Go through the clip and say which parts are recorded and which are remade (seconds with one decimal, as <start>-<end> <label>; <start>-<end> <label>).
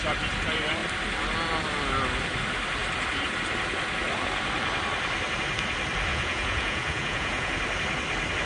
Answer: 0.0-6.1 recorded; 6.1-7.5 remade; 7.5-8.4 recorded